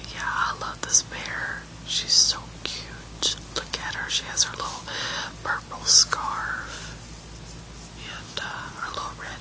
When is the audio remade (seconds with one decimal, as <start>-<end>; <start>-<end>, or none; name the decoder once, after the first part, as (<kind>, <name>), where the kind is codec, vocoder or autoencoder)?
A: 8.3-9.0 (vocoder, Vocos)